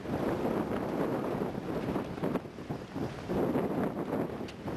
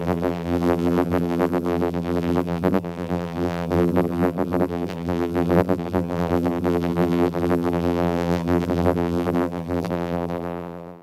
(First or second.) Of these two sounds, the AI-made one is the second